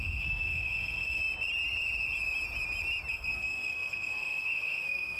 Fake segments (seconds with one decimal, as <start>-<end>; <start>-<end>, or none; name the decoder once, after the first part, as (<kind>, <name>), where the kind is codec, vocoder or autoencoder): 0.0-1.2 (codec, SNAC); 3.1-5.2